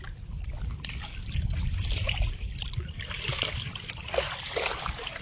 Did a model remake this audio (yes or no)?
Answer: no